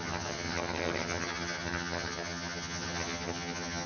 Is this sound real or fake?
fake